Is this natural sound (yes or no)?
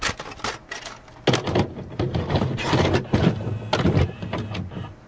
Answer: yes